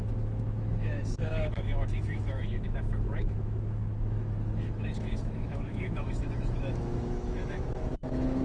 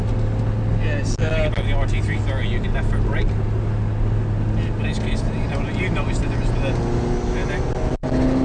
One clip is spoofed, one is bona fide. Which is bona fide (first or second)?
second